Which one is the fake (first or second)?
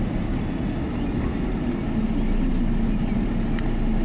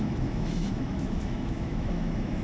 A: second